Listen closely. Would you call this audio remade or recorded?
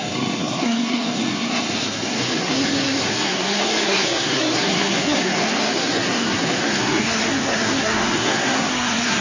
remade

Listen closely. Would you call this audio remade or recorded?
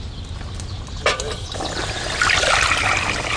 recorded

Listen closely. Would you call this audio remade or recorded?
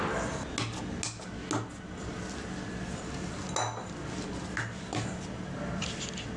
recorded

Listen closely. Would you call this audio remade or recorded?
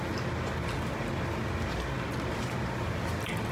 recorded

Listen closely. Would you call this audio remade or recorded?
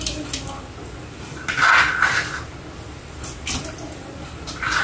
recorded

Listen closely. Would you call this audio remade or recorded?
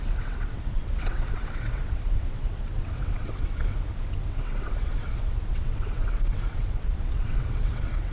remade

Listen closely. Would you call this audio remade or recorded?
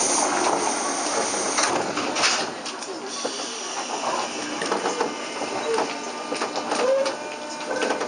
recorded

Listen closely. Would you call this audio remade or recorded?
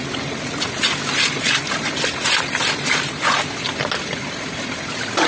recorded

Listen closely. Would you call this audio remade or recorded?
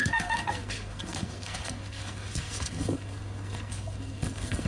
remade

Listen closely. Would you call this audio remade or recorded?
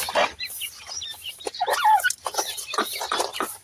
remade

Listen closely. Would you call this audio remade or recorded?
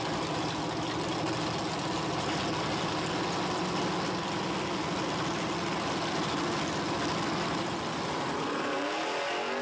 recorded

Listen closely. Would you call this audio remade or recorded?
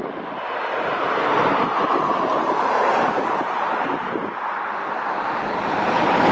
recorded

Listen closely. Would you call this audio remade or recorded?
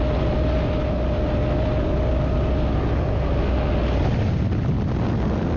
recorded